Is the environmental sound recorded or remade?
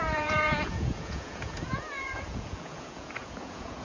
remade